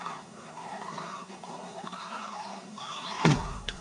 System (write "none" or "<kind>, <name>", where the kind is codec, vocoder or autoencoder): codec, SNAC